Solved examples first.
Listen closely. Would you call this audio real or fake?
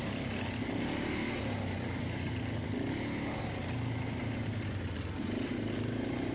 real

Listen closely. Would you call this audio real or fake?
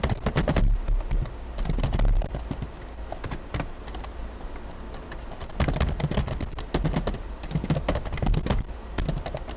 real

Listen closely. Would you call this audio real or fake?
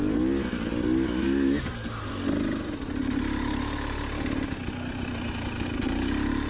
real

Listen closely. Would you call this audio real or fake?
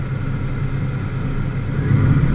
real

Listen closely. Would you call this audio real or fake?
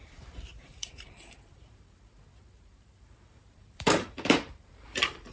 fake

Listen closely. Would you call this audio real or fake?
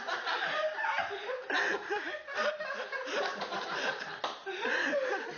fake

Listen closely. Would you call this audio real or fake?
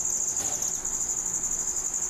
real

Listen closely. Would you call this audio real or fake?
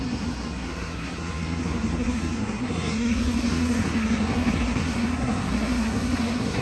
fake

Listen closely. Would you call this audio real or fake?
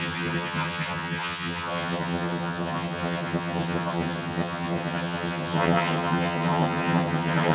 fake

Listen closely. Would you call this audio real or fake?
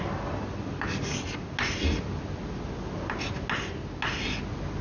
real